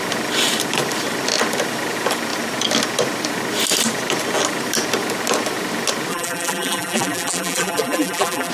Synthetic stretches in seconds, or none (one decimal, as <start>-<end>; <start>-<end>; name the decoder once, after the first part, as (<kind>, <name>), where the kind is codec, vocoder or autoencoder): 6.1-8.5 (vocoder, BigVGAN v2)